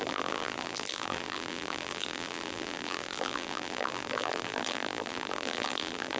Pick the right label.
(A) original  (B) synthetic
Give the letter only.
B